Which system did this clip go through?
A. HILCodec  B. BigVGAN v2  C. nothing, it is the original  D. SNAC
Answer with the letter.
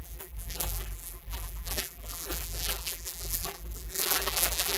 B